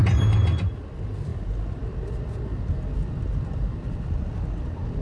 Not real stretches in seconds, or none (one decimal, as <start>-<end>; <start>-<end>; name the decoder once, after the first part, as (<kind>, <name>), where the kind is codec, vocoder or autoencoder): none